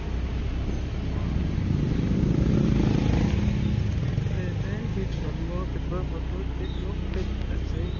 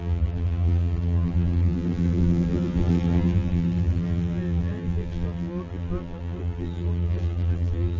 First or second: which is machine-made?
second